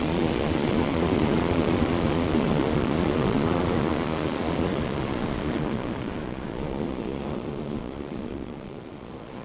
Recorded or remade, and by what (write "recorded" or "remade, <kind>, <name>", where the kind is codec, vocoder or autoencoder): remade, vocoder, Vocos